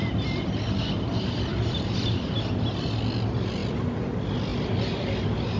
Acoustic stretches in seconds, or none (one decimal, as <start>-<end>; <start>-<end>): 0.0-1.5; 2.4-4.5